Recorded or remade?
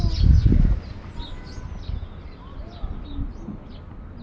recorded